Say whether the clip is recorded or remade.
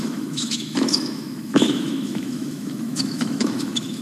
remade